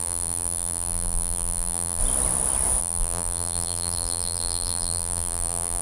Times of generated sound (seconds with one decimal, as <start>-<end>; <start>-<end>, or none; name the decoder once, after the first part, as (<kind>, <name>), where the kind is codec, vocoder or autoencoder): 0.0-2.0 (vocoder, BigVGAN v2); 2.8-5.8